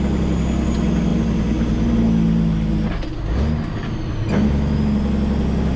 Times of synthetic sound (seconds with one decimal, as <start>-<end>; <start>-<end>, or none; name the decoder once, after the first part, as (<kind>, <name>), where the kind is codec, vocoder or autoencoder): none